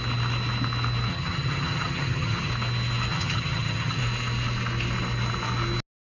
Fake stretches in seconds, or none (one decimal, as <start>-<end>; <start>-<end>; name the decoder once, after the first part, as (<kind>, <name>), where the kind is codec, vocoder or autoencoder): 1.1-2.5 (vocoder, HiFi-GAN); 3.1-4.0